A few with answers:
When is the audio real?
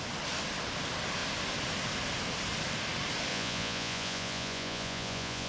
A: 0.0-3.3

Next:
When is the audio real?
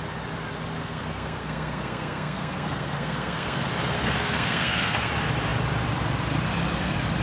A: 0.0-0.8; 5.1-7.2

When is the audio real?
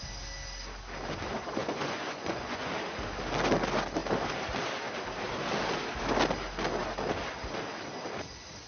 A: 0.0-1.6; 2.7-8.7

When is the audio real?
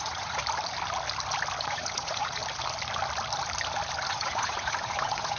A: 0.4-1.6; 2.4-4.1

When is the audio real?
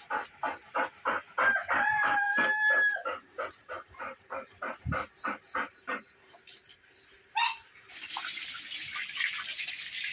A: 0.0-3.0; 6.7-10.1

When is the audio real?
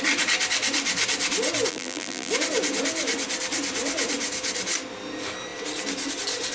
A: 0.0-1.7; 2.3-6.5